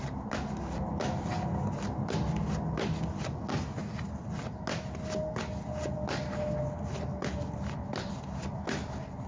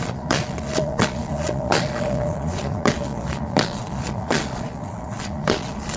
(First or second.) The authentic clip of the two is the first